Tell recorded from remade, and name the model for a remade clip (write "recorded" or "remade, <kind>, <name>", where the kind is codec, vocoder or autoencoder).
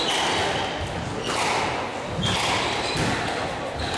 recorded